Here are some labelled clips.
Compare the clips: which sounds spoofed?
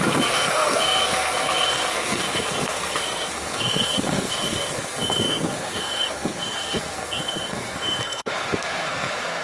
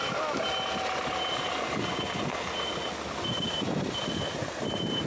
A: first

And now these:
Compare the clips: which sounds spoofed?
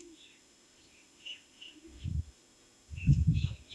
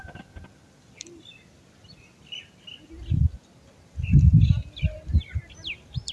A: first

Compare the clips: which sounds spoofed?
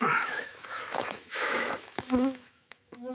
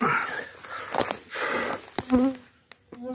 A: first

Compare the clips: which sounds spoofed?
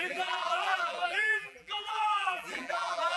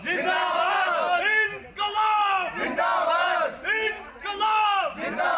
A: first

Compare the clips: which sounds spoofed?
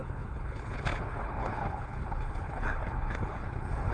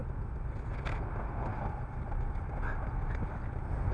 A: first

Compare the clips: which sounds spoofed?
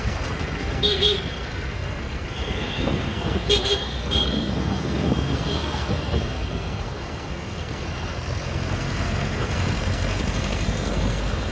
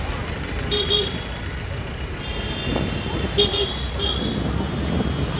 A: first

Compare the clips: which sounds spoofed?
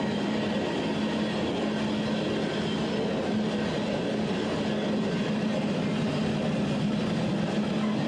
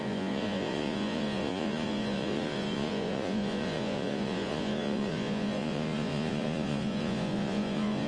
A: second